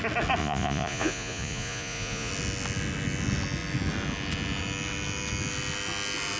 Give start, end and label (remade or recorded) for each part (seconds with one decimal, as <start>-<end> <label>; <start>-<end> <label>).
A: 0.0-0.4 recorded; 0.4-2.3 remade; 2.3-6.4 recorded